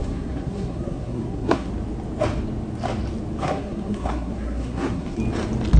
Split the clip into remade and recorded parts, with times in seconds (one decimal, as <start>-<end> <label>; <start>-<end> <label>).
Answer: 0.0-1.7 remade; 1.7-3.4 recorded; 3.4-5.2 remade; 5.2-5.8 recorded